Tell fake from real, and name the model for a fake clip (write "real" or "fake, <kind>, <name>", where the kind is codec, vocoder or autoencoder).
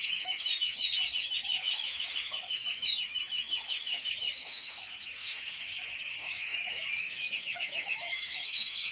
fake, autoencoder, DAC-VAE